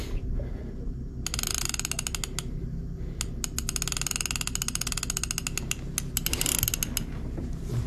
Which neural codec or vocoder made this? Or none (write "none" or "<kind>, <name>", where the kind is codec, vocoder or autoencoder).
none